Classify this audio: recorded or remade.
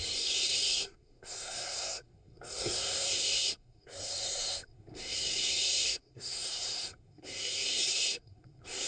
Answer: remade